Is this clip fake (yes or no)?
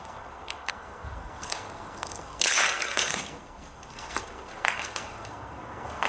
yes